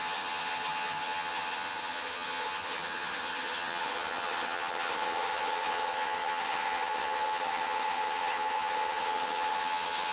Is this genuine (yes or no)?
no